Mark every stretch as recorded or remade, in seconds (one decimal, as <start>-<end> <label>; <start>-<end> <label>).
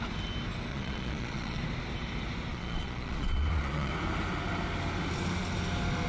0.0-0.7 recorded; 0.7-1.6 remade; 1.6-2.5 recorded; 2.5-3.9 remade; 3.9-6.1 recorded